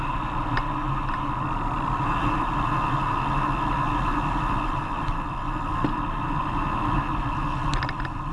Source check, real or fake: real